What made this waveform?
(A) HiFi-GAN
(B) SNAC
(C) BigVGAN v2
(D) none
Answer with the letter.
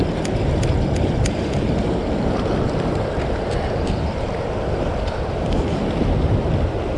D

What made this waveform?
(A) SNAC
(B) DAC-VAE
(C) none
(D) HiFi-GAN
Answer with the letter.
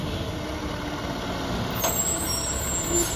C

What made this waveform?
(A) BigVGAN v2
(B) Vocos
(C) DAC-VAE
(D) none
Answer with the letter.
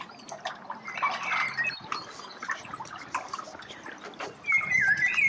D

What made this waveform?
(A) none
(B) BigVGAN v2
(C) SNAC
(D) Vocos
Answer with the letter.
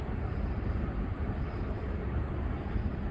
B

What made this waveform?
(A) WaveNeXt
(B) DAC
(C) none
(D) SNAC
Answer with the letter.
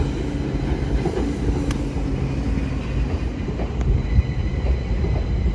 C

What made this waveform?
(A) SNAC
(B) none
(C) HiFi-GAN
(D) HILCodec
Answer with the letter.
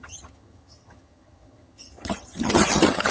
C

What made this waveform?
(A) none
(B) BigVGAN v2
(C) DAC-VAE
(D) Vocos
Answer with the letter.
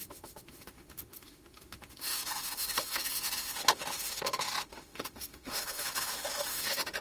C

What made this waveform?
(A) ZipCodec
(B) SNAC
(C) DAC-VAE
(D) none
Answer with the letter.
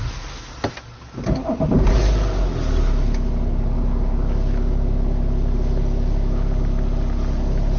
D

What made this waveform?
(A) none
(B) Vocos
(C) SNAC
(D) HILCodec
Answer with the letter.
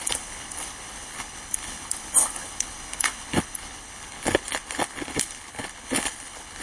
D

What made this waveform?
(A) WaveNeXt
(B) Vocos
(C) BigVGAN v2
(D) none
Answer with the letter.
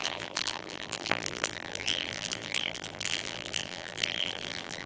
C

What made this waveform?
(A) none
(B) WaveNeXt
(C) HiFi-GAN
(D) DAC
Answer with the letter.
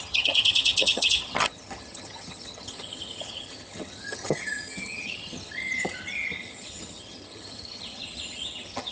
C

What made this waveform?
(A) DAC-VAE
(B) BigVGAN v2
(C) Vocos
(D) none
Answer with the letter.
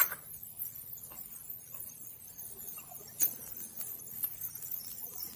D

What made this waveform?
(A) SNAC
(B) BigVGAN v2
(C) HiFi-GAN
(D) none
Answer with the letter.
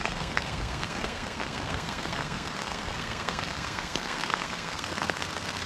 A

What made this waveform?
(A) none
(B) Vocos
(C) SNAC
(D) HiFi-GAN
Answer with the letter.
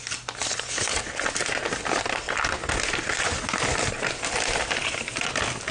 A